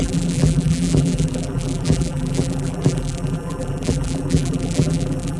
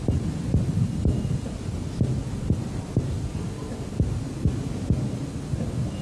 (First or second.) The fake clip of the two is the first